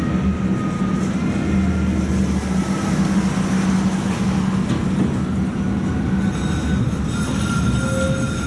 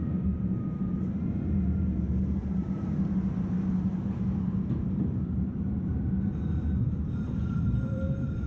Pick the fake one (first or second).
second